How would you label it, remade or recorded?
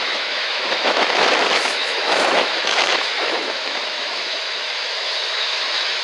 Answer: remade